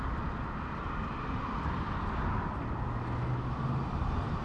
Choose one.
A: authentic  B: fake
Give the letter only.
A